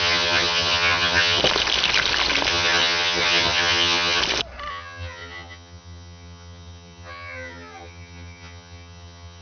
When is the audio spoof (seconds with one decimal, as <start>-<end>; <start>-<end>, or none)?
0.0-1.4; 2.5-4.2; 4.7-9.4